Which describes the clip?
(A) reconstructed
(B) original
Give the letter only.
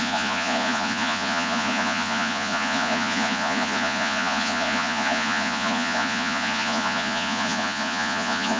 A